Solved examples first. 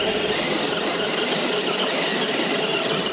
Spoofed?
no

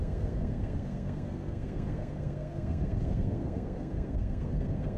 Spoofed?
yes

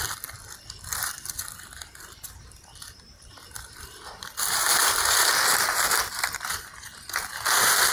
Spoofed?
no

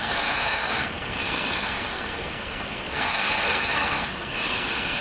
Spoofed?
yes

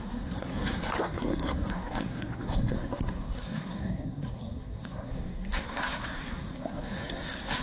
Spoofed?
yes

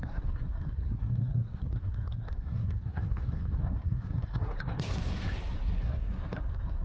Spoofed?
yes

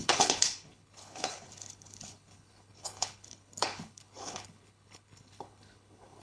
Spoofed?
yes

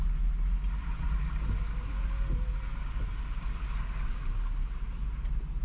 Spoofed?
no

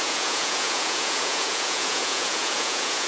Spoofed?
yes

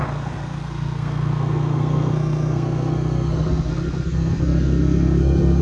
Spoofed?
yes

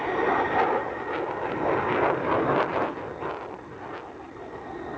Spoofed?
no